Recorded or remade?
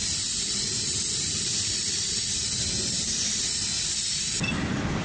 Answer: recorded